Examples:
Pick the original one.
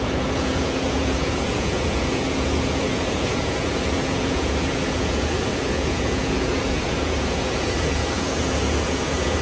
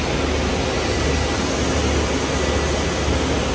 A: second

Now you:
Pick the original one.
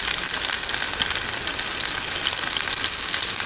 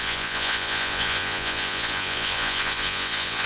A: first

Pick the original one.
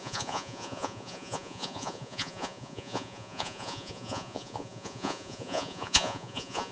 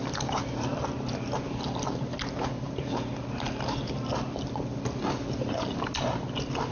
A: second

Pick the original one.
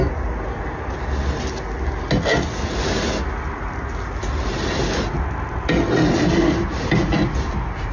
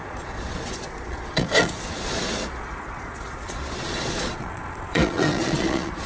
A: first